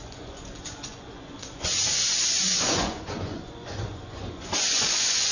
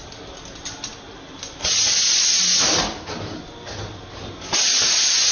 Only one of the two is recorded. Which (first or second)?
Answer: second